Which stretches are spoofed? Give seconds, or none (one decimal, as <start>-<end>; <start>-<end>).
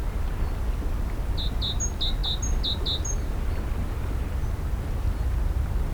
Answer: none